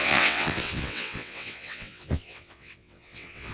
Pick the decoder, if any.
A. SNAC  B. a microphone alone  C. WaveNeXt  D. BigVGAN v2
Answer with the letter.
C